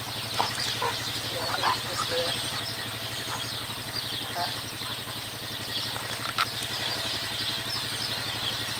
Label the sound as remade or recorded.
remade